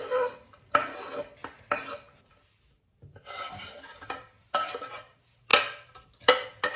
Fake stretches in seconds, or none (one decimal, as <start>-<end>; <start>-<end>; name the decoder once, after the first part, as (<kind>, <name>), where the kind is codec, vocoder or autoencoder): none